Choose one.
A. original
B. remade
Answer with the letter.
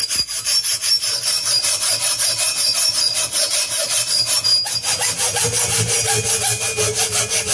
A